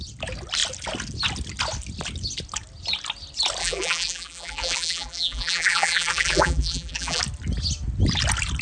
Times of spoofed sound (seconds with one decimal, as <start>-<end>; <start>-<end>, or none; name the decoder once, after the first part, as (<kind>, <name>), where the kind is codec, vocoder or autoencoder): 3.6-7.2 (vocoder, BigVGAN v2)